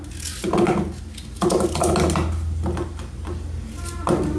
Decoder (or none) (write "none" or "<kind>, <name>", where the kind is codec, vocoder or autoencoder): none